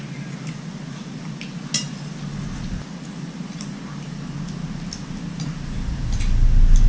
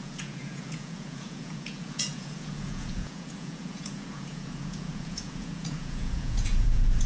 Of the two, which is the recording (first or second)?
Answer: first